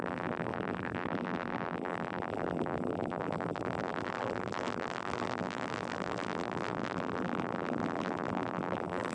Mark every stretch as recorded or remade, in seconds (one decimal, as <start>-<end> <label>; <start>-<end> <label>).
0.0-9.1 remade